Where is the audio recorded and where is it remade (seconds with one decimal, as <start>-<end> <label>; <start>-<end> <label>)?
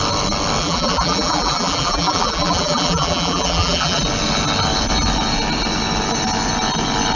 0.0-0.6 recorded; 0.6-4.0 remade; 4.0-7.2 recorded